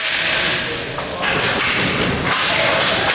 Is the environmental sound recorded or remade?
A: recorded